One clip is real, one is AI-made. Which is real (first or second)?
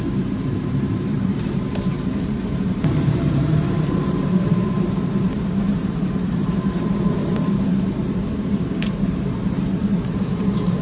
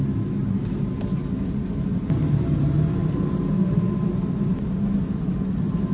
second